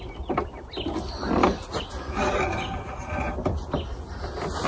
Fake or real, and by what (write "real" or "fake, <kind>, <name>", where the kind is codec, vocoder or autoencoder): real